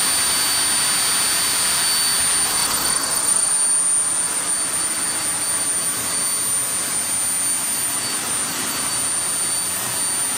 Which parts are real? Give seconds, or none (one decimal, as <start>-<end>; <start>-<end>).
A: 0.0-2.6; 3.5-10.4